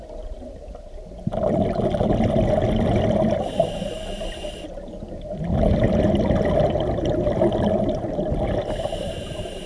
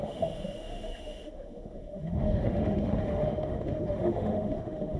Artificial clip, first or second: second